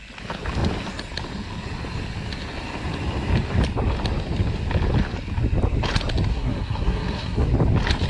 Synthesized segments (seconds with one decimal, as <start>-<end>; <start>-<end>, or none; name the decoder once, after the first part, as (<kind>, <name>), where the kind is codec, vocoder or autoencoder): 6.3-7.5 (codec, SNAC)